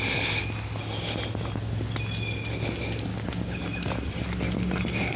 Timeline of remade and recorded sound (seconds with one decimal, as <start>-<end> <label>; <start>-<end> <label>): 0.0-3.1 recorded; 3.1-3.6 remade; 3.6-5.2 recorded